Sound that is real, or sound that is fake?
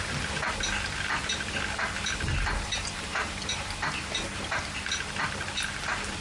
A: real